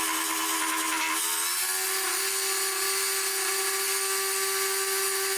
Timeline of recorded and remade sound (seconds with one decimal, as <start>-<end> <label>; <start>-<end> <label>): 0.0-5.4 recorded